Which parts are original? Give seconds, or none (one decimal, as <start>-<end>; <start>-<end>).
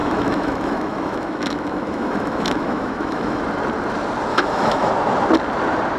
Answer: 3.4-4.3; 4.9-6.0